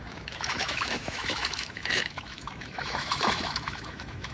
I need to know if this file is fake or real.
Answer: fake